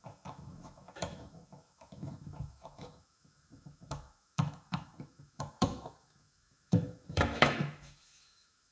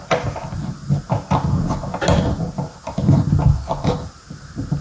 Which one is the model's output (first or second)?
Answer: first